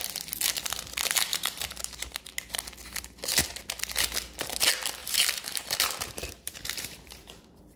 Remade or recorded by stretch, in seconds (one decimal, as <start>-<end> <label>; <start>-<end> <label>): 0.0-1.3 recorded; 1.3-2.2 remade; 2.2-5.0 recorded; 5.0-7.8 remade